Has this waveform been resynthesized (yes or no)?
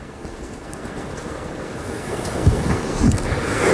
yes